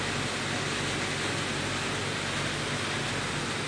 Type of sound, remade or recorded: recorded